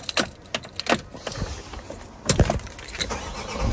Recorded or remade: recorded